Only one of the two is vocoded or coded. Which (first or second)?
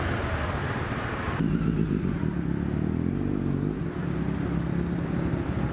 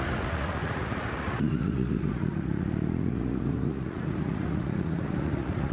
second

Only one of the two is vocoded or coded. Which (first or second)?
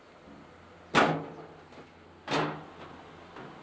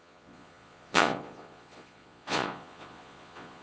second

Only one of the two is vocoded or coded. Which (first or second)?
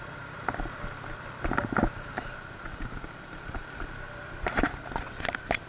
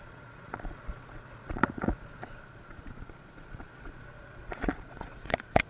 second